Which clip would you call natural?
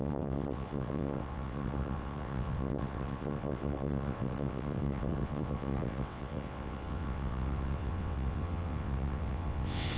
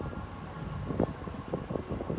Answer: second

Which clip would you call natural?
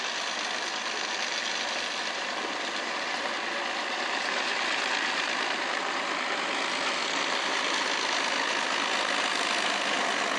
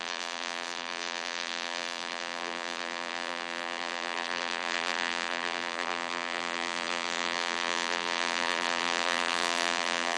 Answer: first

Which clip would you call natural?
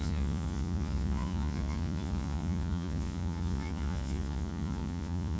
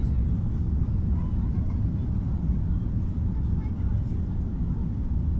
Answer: second